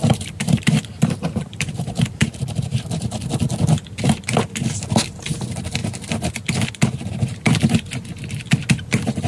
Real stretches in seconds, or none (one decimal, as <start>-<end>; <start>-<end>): 3.3-9.3